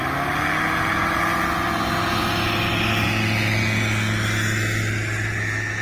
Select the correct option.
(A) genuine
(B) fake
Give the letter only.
A